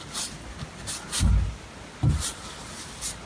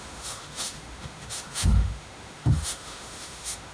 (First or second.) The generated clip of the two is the second